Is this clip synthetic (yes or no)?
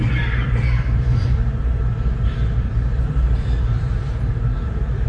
yes